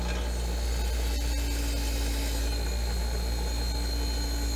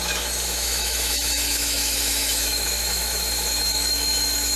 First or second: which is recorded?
first